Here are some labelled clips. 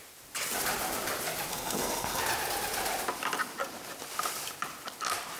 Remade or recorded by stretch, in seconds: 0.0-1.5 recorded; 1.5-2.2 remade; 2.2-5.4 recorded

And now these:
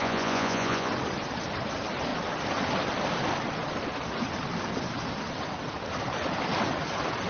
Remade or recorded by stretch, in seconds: 0.0-0.9 remade; 0.9-7.3 recorded

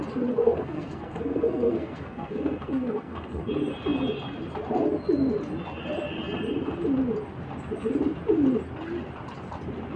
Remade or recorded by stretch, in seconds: 0.0-0.4 recorded; 0.4-3.5 remade; 3.5-10.0 recorded

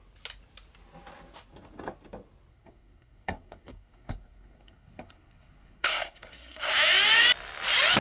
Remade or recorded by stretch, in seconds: 0.0-2.5 recorded; 2.5-6.7 remade; 6.7-8.0 recorded

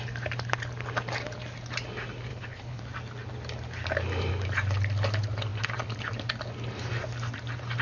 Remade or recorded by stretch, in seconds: 0.0-2.3 recorded; 2.3-2.8 remade; 2.8-7.8 recorded

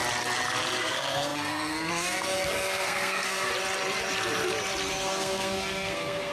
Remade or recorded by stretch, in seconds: 0.0-0.8 recorded; 0.8-3.5 remade; 3.5-4.9 recorded; 4.9-6.3 remade